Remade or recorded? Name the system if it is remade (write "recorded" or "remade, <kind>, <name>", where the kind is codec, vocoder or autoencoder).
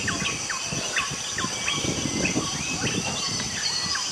recorded